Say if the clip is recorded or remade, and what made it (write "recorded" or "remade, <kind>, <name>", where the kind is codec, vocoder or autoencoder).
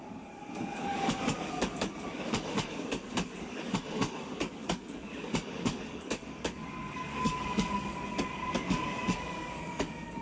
remade, codec, DAC